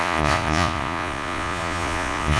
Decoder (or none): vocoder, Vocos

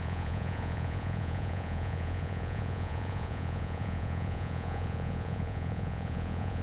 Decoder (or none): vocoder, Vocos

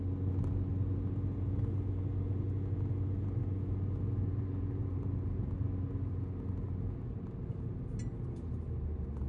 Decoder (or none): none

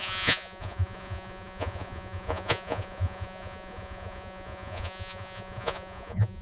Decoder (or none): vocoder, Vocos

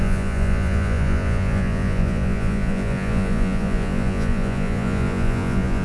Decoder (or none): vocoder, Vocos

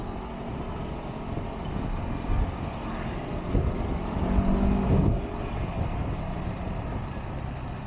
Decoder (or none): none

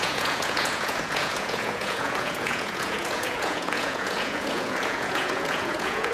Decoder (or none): vocoder, Vocos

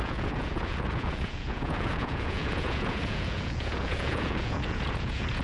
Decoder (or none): vocoder, Vocos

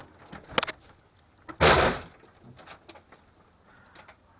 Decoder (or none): none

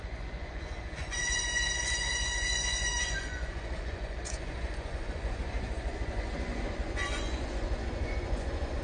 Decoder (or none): vocoder, Vocos